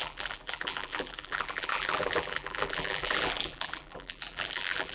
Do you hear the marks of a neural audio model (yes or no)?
yes